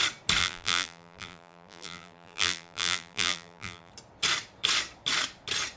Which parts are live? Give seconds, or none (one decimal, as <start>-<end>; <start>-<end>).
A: 0.0-0.4; 3.9-5.8